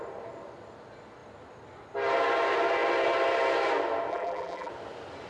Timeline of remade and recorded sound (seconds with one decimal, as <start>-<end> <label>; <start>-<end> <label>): 0.0-4.1 recorded; 4.1-4.7 remade; 4.7-5.3 recorded